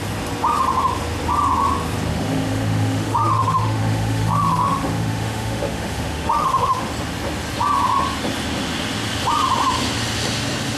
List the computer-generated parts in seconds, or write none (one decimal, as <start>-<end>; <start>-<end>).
2.1-6.9